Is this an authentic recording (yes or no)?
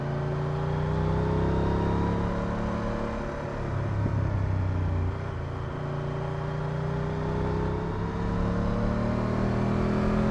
yes